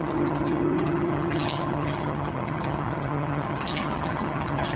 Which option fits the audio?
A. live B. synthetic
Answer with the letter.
B